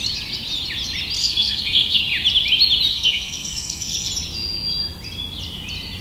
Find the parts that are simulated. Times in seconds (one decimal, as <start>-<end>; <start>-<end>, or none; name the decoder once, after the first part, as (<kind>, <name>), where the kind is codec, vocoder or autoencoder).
1.2-2.0 (codec, SNAC); 2.9-4.1